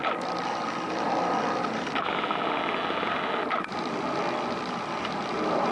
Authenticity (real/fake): real